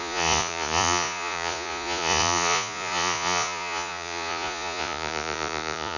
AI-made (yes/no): yes